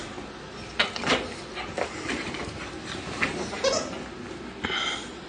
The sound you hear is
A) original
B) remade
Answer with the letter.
A